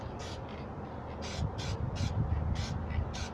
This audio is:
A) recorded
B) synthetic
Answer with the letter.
A